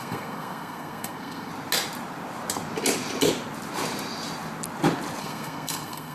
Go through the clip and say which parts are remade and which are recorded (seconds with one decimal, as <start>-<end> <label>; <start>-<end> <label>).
0.0-1.5 remade; 1.5-5.2 recorded; 5.2-6.1 remade